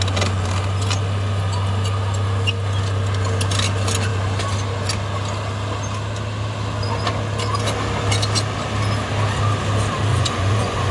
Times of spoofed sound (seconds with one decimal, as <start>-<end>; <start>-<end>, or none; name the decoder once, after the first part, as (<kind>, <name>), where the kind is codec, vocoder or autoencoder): 10.1-10.9 (vocoder, Vocos)